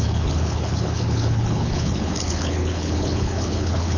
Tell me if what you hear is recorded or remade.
remade